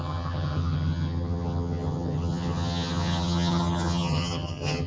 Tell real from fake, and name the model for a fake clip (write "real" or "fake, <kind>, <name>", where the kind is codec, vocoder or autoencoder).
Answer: fake, vocoder, HiFi-GAN